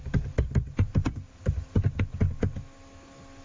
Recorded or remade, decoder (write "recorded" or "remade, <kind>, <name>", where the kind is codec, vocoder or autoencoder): recorded